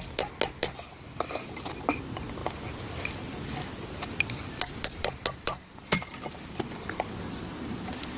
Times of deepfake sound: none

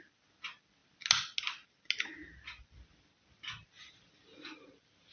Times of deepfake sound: none

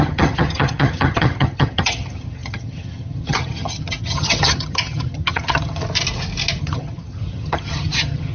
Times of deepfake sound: 0.0-5.8 (vocoder, HiFi-GAN); 6.6-8.3

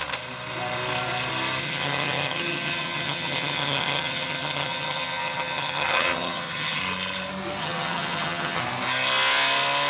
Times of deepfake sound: 1.6-6.8 (vocoder, HiFi-GAN); 7.6-8.6